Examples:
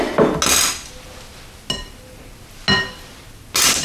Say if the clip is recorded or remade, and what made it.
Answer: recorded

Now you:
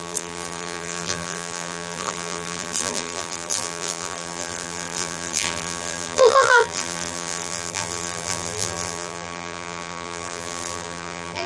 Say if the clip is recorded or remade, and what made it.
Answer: remade, vocoder, BigVGAN v2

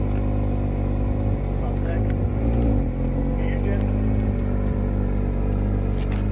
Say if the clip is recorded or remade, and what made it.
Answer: recorded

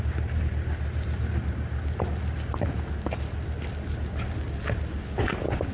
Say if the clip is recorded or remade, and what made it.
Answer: recorded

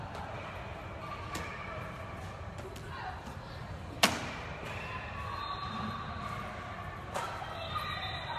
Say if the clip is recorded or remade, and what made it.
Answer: recorded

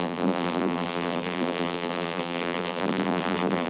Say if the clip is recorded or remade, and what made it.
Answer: remade, vocoder, BigVGAN v2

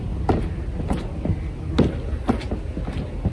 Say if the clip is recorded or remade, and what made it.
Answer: recorded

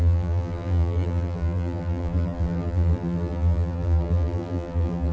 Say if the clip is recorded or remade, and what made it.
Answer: remade, vocoder, BigVGAN v2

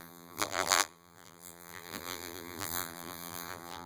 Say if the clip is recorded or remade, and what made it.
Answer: remade, vocoder, BigVGAN v2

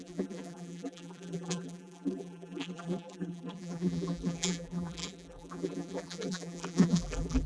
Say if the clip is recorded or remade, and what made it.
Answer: remade, vocoder, BigVGAN v2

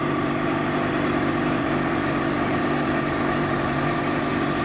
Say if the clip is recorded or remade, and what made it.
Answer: remade, vocoder, BigVGAN v2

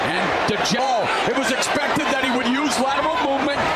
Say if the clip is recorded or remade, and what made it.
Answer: remade, vocoder, BigVGAN v2